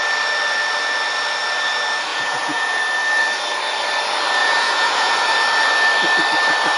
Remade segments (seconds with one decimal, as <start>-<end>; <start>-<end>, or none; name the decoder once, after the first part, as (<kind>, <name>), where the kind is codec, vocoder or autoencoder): 2.1-2.8 (vocoder, Vocos); 4.4-5.2

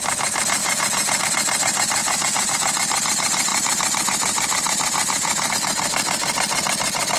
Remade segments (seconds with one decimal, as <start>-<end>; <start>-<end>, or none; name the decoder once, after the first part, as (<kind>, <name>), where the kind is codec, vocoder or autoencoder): 0.6-1.2 (vocoder, Vocos); 2.0-2.5

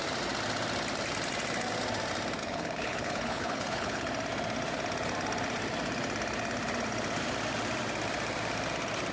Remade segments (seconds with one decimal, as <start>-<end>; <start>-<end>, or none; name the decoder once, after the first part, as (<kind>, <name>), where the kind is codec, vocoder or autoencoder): 2.4-4.1 (codec, HILCodec)

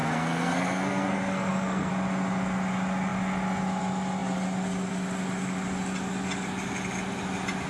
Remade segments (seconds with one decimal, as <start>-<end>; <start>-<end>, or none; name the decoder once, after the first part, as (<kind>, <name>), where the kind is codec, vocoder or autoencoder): 0.0-1.9 (codec, SNAC)